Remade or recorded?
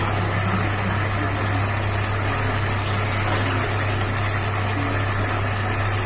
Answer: recorded